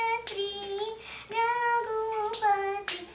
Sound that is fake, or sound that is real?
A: real